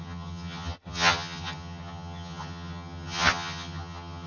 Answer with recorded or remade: remade